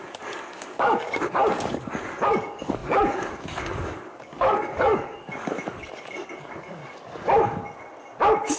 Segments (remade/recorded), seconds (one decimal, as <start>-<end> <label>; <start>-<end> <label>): 0.0-6.8 remade; 6.8-8.6 recorded